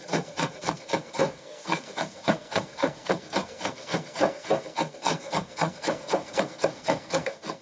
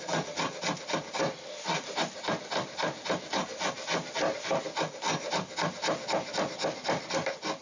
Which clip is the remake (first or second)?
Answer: first